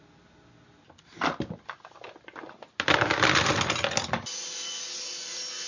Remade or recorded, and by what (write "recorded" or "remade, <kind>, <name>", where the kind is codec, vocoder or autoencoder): recorded